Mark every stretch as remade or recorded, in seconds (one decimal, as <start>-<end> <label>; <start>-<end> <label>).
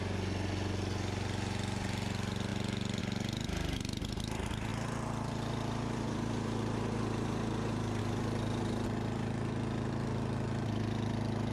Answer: 0.0-4.7 recorded; 4.7-8.0 remade; 8.0-11.5 recorded